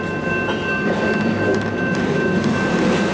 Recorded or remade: recorded